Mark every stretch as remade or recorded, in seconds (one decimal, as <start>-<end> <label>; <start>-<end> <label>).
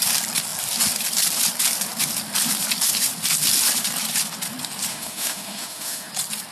0.0-4.9 recorded; 4.9-6.1 remade; 6.1-6.5 recorded